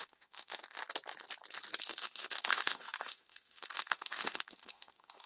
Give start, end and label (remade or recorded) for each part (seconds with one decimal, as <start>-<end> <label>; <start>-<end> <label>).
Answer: 0.0-0.8 remade; 0.8-1.8 recorded; 1.8-5.3 remade